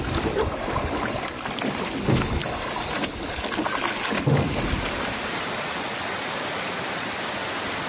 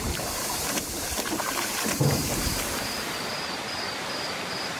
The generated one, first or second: second